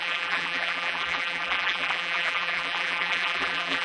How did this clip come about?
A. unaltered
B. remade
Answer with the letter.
B